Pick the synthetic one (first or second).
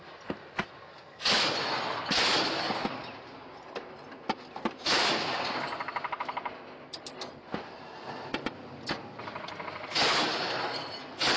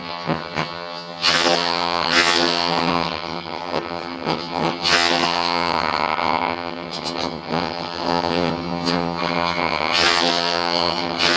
second